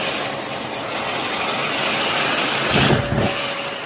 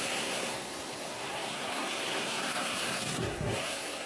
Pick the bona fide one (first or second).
first